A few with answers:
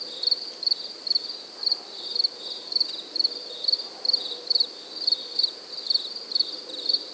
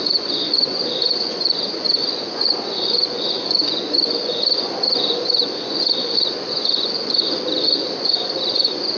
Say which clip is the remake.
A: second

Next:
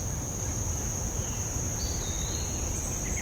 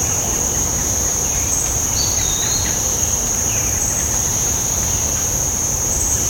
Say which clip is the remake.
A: second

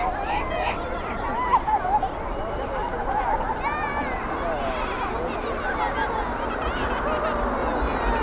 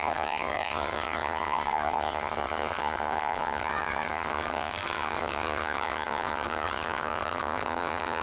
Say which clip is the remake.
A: second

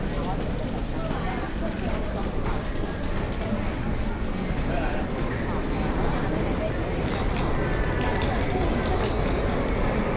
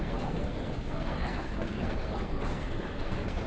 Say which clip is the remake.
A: second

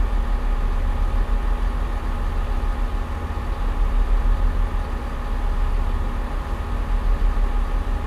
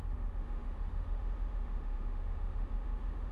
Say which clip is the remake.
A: second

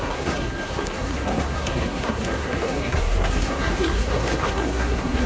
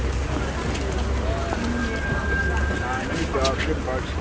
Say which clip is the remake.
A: first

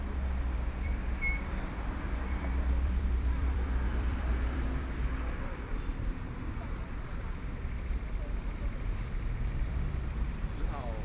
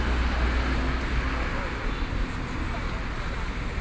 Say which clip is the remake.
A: first